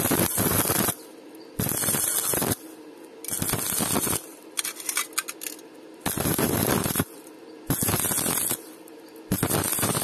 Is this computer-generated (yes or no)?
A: no